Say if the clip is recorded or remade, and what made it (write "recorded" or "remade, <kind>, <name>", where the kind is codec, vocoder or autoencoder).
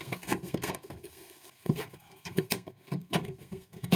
remade, codec, SNAC